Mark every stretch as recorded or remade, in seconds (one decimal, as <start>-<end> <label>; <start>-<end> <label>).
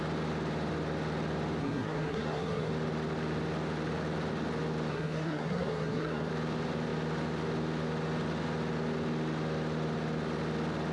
0.0-1.6 recorded; 1.6-2.7 remade; 2.7-4.9 recorded; 4.9-6.3 remade; 6.3-10.9 recorded